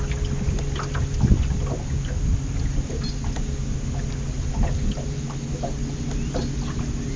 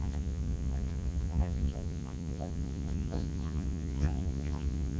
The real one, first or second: first